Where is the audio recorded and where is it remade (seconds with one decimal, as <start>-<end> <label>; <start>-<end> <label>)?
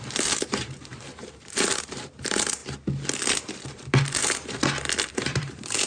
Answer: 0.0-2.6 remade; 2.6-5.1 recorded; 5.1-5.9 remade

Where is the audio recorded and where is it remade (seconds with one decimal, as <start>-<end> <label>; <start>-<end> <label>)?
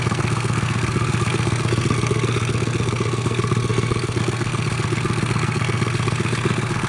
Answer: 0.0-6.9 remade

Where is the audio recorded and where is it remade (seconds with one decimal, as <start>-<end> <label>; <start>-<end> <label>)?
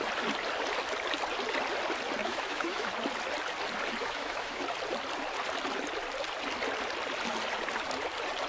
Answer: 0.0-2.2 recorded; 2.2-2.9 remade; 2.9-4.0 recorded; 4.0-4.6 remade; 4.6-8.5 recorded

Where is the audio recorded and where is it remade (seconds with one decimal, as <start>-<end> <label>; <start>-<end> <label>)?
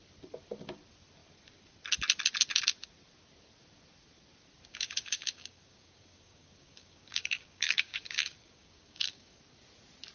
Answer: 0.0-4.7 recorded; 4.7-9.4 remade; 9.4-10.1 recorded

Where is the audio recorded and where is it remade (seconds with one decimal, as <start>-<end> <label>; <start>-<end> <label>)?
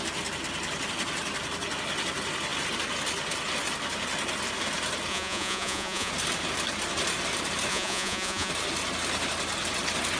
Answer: 0.0-5.1 recorded; 5.1-6.1 remade; 6.1-7.7 recorded; 7.7-8.5 remade; 8.5-10.2 recorded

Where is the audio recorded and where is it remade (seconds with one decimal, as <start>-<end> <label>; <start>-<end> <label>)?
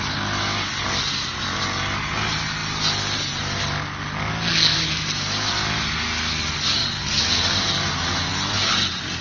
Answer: 0.0-4.7 recorded; 4.7-5.5 remade; 5.5-6.8 recorded; 6.8-8.3 remade; 8.3-9.2 recorded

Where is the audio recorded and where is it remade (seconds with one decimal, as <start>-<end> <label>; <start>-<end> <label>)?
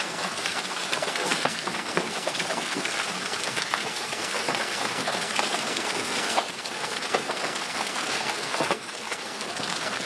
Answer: 0.0-10.1 remade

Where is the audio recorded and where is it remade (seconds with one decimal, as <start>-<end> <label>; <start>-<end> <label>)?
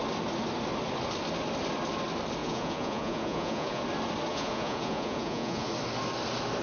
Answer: 0.0-2.4 recorded; 2.4-3.8 remade; 3.8-4.3 recorded; 4.3-5.7 remade; 5.7-6.6 recorded